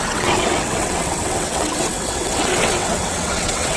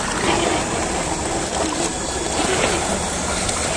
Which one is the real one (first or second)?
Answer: second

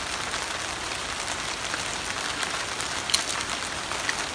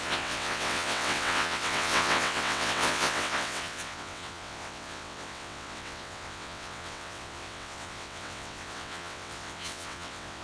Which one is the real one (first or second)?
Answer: first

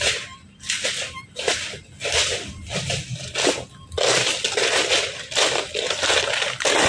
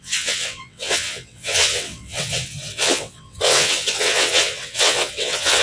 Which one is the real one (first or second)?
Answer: first